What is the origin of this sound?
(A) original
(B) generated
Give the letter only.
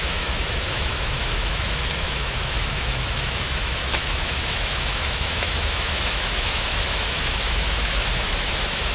B